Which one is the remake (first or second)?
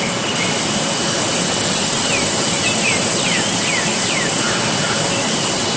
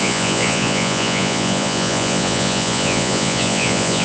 second